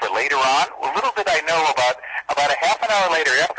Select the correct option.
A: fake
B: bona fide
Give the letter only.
B